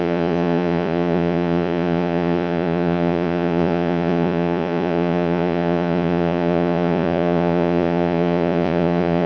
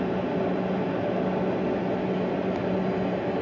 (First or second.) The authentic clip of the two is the second